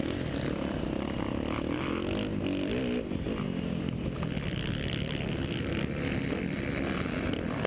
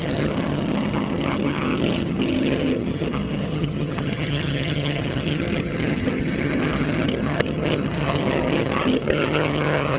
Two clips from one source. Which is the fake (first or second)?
second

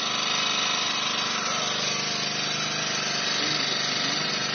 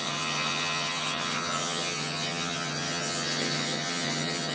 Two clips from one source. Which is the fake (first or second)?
second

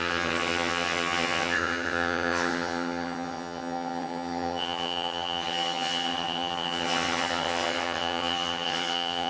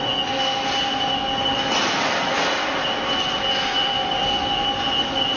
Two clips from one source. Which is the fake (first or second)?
first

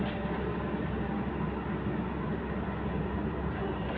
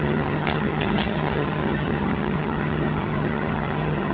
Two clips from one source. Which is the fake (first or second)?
second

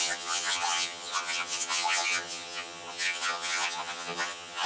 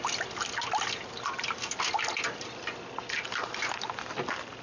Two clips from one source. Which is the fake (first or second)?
first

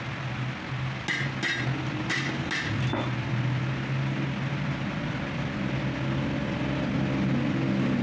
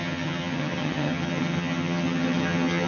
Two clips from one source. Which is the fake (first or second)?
second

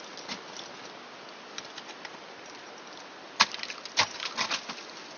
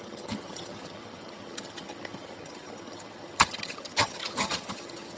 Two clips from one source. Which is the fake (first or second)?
second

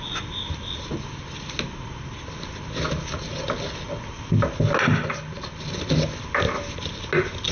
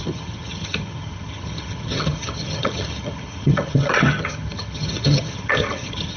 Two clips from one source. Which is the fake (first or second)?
second